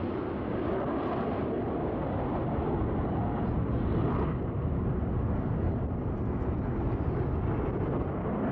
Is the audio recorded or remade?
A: recorded